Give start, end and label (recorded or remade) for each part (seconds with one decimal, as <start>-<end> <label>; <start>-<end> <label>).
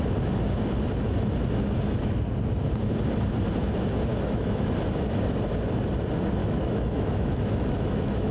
0.0-4.1 recorded; 4.1-4.7 remade; 4.7-6.4 recorded; 6.4-8.3 remade